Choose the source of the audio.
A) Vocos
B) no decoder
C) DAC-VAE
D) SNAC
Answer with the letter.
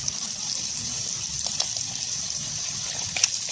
B